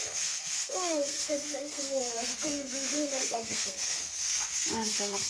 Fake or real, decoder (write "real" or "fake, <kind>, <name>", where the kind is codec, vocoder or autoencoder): fake, codec, SNAC